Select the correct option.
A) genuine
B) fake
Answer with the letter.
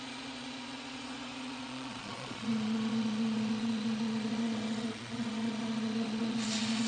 B